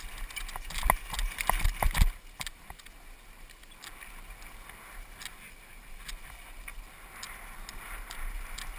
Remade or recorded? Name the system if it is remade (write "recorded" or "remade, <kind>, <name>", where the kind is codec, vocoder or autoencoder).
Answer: recorded